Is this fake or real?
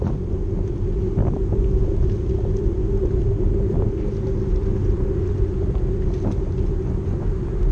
real